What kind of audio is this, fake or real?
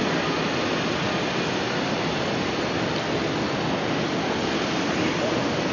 real